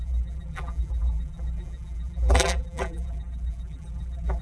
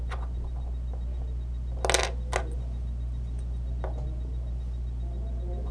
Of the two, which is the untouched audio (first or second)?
second